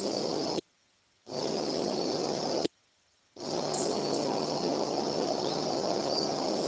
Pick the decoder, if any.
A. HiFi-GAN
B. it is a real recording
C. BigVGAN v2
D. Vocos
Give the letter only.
A